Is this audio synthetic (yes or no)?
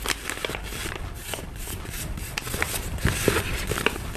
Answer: yes